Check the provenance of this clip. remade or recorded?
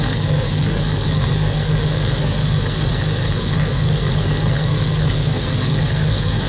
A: remade